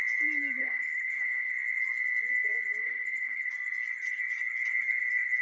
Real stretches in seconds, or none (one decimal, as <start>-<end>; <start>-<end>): 0.0-0.6; 1.5-2.8; 3.5-5.4